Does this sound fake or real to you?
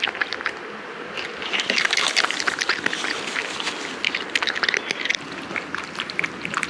real